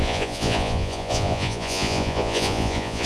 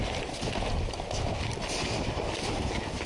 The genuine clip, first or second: second